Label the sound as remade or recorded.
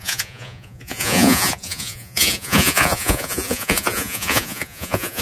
remade